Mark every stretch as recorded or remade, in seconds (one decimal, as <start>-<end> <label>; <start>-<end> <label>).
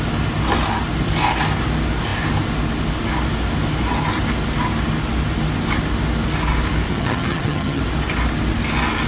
0.0-6.9 recorded; 6.9-7.8 remade; 7.8-9.1 recorded